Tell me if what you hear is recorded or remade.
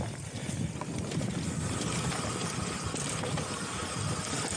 recorded